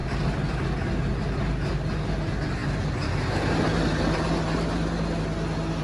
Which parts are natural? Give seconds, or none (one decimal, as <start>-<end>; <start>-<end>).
0.0-5.8